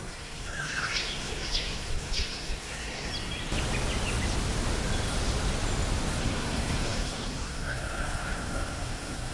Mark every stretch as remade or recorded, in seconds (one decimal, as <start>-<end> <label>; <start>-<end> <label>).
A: 0.0-3.1 remade; 3.1-6.2 recorded; 6.2-9.3 remade